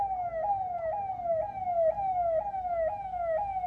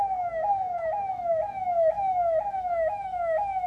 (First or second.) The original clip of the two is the first